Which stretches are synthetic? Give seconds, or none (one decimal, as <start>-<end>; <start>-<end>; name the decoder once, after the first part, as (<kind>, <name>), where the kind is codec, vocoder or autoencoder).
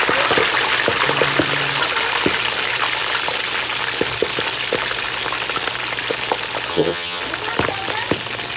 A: 6.7-7.2 (vocoder, HiFi-GAN)